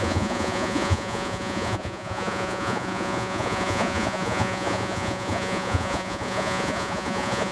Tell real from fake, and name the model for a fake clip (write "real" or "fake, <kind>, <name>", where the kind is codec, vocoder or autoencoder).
fake, vocoder, Vocos